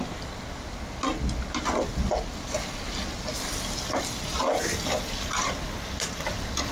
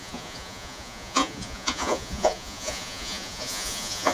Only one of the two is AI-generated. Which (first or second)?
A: second